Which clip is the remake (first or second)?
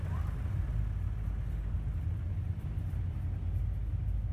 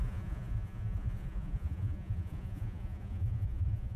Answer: second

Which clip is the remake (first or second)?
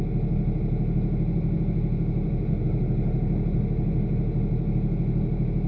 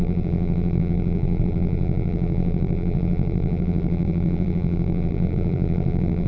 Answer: second